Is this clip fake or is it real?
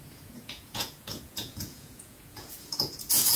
fake